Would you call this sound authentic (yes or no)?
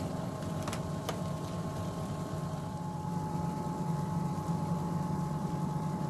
no